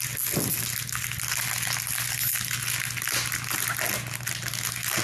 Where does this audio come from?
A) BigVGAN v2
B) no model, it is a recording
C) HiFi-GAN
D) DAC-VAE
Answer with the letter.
B